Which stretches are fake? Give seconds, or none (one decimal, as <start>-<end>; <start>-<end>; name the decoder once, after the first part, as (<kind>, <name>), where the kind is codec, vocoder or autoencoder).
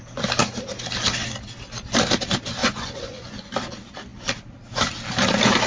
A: 2.6-3.5 (vocoder, Vocos)